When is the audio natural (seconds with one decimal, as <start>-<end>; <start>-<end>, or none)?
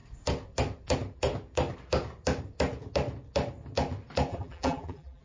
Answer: 0.0-4.3